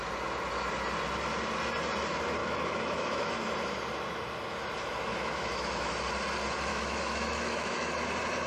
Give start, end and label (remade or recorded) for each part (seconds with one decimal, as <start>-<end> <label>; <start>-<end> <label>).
0.0-2.4 recorded; 2.4-3.3 remade; 3.3-5.1 recorded; 5.1-6.0 remade; 6.0-6.7 recorded; 6.7-7.9 remade; 7.9-8.5 recorded